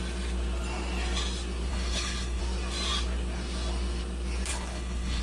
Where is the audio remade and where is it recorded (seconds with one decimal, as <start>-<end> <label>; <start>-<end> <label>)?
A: 0.0-1.7 recorded; 1.7-2.4 remade; 2.4-4.5 recorded; 4.5-5.2 remade